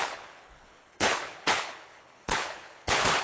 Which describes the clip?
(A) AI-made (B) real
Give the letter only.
A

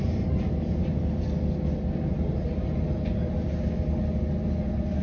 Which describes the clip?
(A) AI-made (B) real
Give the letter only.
B